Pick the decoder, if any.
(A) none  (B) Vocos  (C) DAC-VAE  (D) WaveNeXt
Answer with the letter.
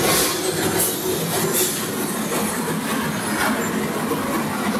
A